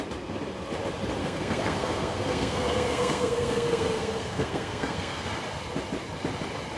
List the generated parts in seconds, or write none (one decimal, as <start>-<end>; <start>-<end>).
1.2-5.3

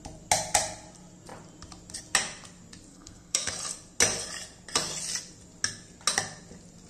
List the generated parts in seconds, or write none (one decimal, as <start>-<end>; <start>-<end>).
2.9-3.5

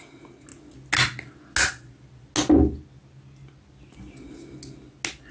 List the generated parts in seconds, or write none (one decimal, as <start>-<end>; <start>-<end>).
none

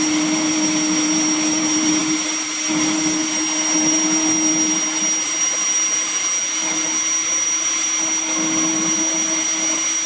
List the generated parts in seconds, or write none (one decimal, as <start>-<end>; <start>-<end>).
none